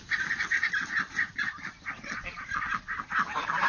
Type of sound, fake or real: real